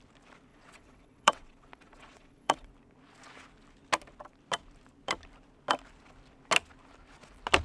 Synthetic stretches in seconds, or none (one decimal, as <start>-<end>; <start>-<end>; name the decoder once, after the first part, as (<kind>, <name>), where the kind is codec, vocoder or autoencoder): 0.5-2.7 (vocoder, WaveNeXt)